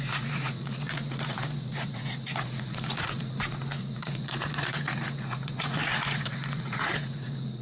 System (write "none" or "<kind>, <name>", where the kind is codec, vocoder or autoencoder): vocoder, Vocos